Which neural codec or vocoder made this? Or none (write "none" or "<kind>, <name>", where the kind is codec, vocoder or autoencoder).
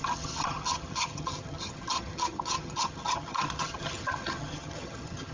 vocoder, HiFi-GAN